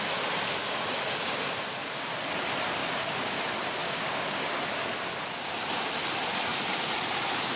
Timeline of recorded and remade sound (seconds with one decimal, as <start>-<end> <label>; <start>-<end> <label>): 0.0-0.6 recorded; 0.6-1.6 remade; 1.6-2.8 recorded; 2.8-3.4 remade; 3.4-3.8 recorded; 3.8-4.5 remade; 4.5-7.6 recorded